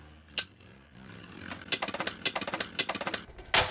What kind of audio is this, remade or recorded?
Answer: recorded